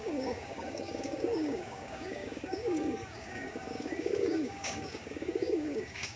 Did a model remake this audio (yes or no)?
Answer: yes